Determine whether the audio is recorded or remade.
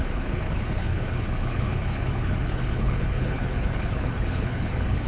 remade